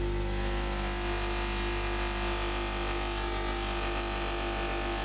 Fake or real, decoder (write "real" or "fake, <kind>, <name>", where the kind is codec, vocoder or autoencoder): real